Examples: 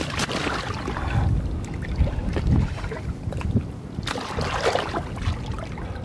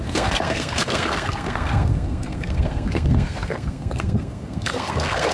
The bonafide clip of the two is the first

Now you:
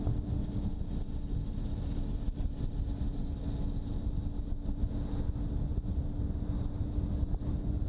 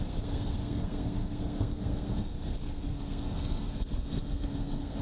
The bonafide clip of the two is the first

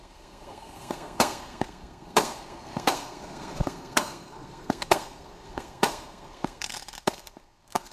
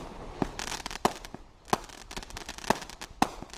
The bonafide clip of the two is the second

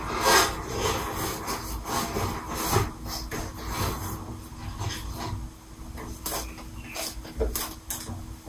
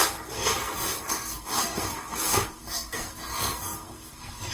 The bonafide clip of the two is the first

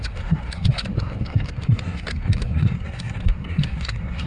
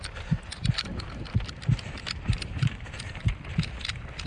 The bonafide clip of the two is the second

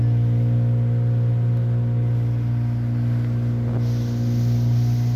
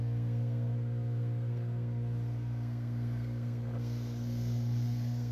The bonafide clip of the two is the first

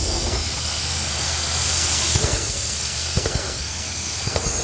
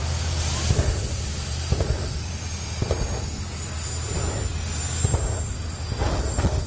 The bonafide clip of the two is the second